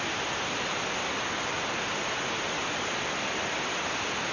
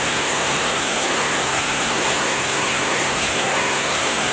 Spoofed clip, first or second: second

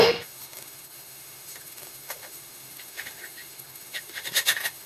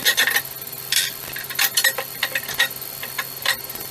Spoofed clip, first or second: first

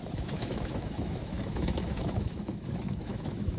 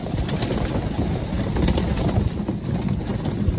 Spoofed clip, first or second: first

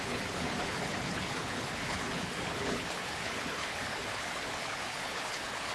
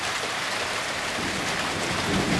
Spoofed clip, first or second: first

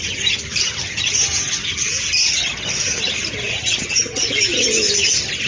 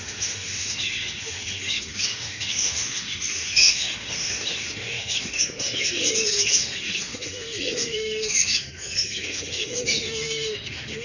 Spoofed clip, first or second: second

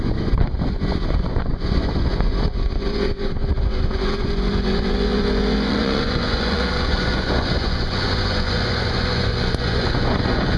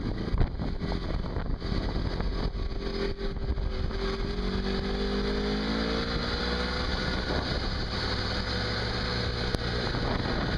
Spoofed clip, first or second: first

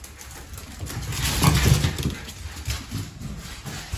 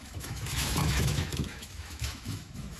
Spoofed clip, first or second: second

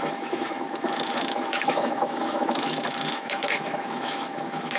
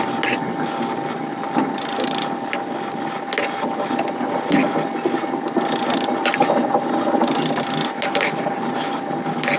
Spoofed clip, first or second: first